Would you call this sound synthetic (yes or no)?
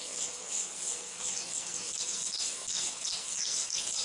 yes